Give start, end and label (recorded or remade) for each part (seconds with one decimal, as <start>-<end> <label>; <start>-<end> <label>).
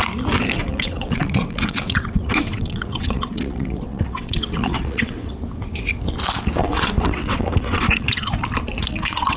0.0-0.6 recorded; 0.6-5.3 remade; 5.3-6.6 recorded; 6.6-8.3 remade; 8.3-8.8 recorded; 8.8-9.4 remade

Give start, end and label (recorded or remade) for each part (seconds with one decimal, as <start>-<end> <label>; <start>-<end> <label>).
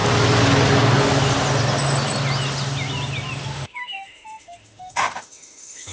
0.0-3.5 recorded; 3.5-5.9 remade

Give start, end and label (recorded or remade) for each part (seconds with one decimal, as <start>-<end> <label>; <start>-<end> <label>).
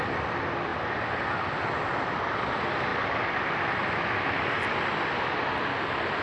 0.0-6.2 recorded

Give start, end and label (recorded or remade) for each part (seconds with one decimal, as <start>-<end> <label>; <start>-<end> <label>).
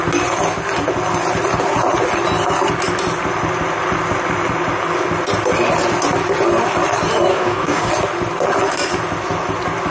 0.0-7.3 recorded; 7.3-7.9 remade; 7.9-9.9 recorded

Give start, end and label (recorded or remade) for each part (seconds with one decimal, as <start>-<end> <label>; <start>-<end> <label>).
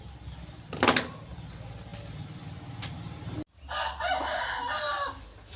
0.0-5.6 recorded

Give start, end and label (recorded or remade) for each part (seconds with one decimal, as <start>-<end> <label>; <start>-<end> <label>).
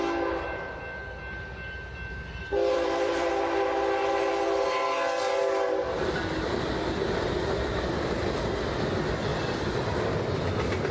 0.0-2.4 recorded; 2.4-3.3 remade; 3.3-9.3 recorded; 9.3-10.2 remade; 10.2-10.9 recorded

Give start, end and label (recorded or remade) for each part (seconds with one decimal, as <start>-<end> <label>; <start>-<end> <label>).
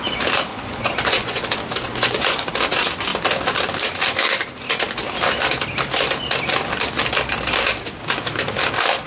0.0-0.5 recorded; 0.5-1.4 remade; 1.4-1.9 recorded; 1.9-2.5 remade; 2.5-9.1 recorded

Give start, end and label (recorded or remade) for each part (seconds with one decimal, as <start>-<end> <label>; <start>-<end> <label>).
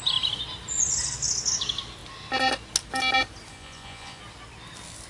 0.0-3.5 recorded; 3.5-4.2 remade; 4.2-5.1 recorded